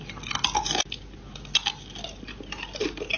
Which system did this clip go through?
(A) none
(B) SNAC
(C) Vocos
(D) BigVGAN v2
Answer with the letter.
A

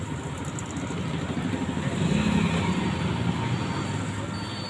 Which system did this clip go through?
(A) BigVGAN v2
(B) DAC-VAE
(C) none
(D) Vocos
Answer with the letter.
C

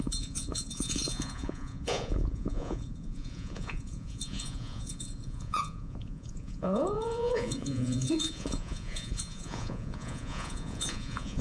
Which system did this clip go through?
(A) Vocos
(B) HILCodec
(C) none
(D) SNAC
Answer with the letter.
A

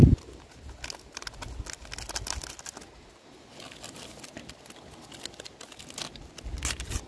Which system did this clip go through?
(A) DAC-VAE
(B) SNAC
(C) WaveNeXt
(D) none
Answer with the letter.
D